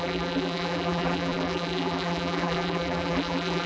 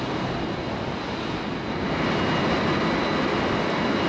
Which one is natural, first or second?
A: second